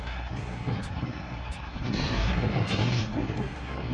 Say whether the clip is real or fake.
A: fake